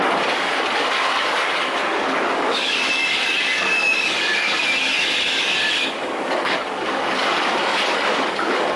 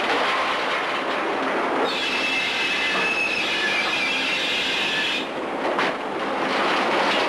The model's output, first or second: first